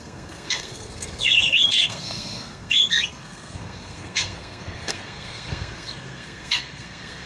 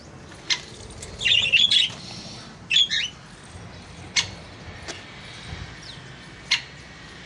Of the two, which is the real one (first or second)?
second